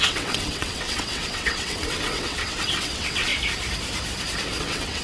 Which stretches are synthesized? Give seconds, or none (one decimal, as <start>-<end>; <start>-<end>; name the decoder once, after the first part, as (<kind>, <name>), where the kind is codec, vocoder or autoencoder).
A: 0.0-3.3 (vocoder, WaveNeXt); 4.6-5.0

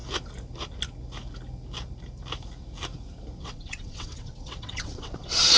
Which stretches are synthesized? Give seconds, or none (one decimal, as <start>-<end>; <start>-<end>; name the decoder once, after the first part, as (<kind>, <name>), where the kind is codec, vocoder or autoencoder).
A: 3.4-5.6 (vocoder, WaveNeXt)

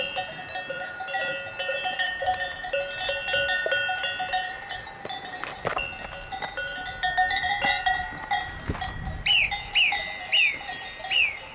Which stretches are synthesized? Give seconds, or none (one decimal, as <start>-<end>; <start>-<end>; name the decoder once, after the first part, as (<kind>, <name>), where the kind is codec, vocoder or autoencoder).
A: none

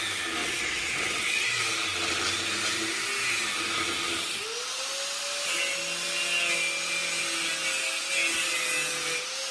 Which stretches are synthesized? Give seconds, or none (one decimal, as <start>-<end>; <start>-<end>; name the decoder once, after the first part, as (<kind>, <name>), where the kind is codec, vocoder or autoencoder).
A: 0.4-1.6 (vocoder, WaveNeXt)

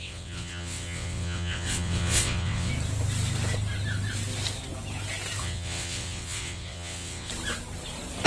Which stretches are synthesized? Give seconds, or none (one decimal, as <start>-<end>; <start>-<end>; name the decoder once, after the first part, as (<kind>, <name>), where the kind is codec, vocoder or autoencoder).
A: 0.0-2.7 (vocoder, WaveNeXt); 5.4-7.3

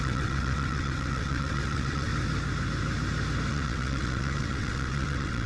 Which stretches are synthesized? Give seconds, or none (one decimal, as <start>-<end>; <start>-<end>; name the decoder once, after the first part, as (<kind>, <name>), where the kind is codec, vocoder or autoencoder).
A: 0.0-2.1 (vocoder, WaveNeXt); 3.5-5.5

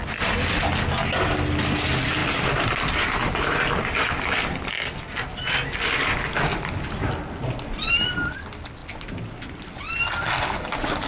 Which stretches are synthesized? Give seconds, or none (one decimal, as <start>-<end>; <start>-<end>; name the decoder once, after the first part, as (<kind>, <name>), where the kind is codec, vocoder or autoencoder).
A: none

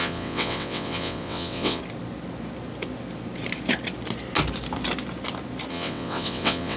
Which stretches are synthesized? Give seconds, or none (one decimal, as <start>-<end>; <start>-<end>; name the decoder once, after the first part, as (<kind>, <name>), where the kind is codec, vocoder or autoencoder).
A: 0.0-1.8 (vocoder, WaveNeXt); 5.7-6.8